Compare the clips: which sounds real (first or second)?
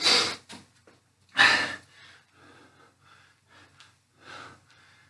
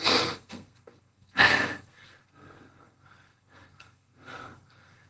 first